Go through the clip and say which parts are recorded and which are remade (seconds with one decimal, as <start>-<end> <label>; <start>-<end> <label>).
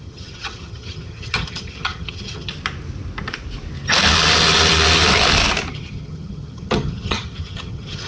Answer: 0.0-2.5 remade; 2.5-5.7 recorded; 5.7-8.1 remade